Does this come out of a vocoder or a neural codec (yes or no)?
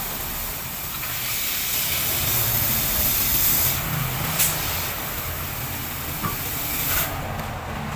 no